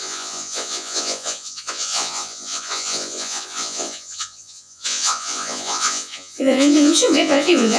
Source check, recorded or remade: remade